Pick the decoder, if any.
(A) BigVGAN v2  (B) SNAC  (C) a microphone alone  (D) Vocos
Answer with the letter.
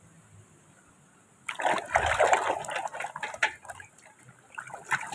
C